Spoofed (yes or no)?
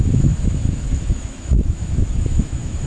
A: yes